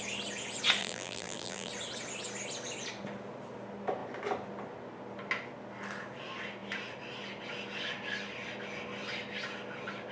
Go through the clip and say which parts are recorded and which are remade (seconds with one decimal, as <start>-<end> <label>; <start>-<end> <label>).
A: 0.0-0.8 recorded; 0.8-1.7 remade; 1.7-10.1 recorded